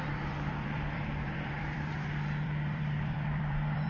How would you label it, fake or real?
fake